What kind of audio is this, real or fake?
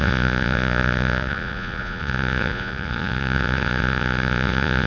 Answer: fake